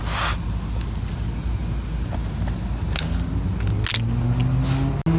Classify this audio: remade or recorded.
recorded